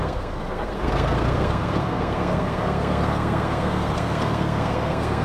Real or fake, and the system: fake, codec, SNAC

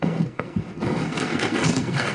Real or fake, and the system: fake, codec, SNAC